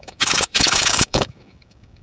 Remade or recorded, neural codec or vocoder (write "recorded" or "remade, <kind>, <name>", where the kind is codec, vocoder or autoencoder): remade, codec, DAC